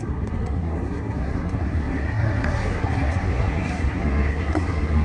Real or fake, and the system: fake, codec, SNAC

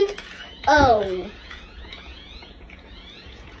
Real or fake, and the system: fake, vocoder, Vocos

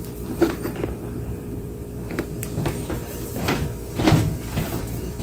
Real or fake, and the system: fake, vocoder, BigVGAN v2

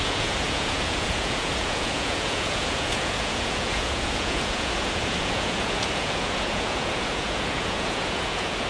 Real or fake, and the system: fake, vocoder, Vocos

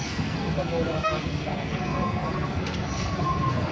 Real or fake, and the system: fake, codec, SNAC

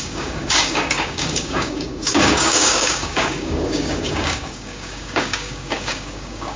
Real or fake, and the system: fake, codec, DAC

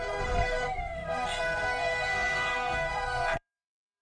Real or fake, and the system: fake, codec, SNAC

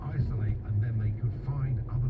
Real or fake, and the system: real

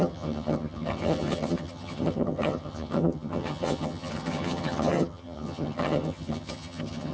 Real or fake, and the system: fake, vocoder, HiFi-GAN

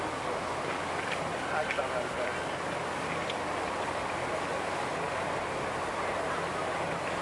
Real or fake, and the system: real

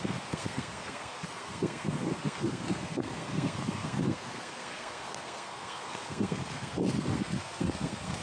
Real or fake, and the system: fake, codec, SNAC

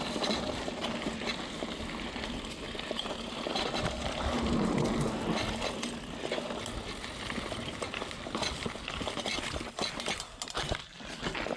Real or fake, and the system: real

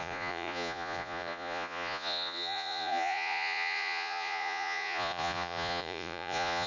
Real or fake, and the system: fake, vocoder, Vocos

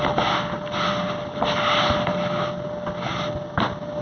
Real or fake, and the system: real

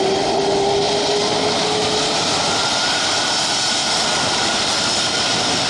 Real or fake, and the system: real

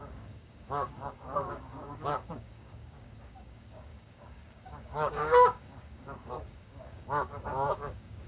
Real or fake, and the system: fake, codec, DAC